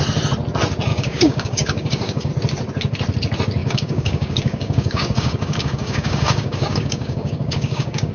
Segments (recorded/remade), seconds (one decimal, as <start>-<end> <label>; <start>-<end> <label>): 0.0-0.9 recorded; 0.9-2.3 remade; 2.3-3.6 recorded; 3.6-8.1 remade

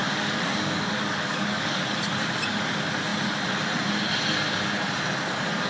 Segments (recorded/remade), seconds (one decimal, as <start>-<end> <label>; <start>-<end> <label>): 0.0-1.8 remade; 1.8-5.7 recorded